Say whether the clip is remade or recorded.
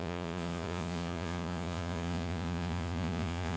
remade